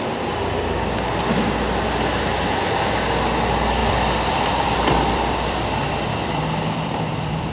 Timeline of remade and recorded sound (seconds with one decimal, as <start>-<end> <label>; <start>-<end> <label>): 0.0-3.8 recorded; 3.8-7.5 remade